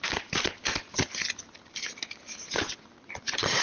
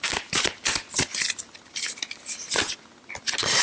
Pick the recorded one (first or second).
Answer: second